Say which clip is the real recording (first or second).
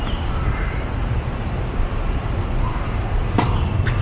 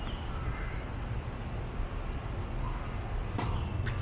second